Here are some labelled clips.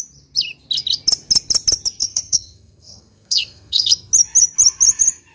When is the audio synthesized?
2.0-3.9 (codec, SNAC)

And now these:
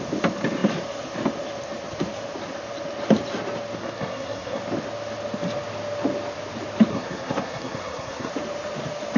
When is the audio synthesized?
3.8-4.6 (codec, SNAC); 6.9-8.3

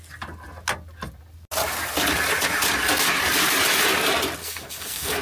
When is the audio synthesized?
4.4-5.2 (codec, SNAC)

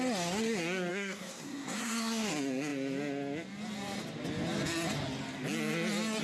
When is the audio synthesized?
0.9-2.3 (codec, SNAC)

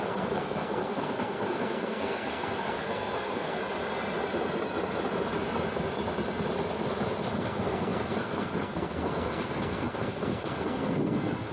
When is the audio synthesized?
0.0-3.6 (codec, SNAC); 7.3-11.5

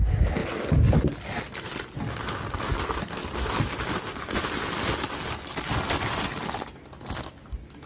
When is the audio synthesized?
none

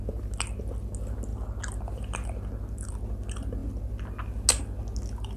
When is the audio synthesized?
none